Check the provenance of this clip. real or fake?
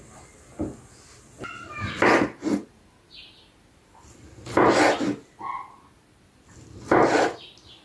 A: real